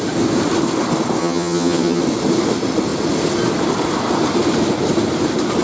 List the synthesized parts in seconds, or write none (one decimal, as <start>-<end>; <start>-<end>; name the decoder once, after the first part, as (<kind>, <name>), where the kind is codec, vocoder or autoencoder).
1.2-2.0 (vocoder, HiFi-GAN)